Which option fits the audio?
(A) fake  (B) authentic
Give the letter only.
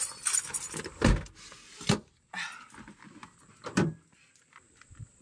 B